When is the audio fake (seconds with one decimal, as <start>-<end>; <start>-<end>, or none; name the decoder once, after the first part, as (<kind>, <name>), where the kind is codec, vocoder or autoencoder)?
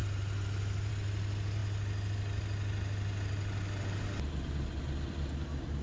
none